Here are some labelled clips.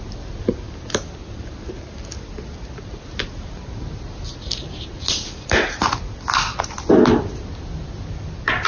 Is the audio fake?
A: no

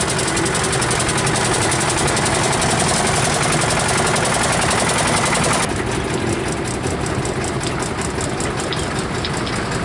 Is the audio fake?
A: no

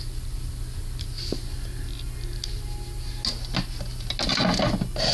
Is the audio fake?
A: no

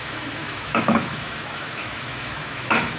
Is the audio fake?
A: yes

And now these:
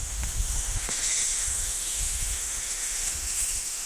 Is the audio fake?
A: yes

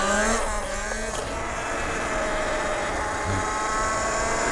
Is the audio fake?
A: no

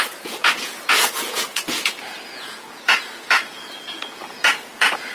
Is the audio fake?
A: yes